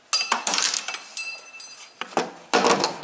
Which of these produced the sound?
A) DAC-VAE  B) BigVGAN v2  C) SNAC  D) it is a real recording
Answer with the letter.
D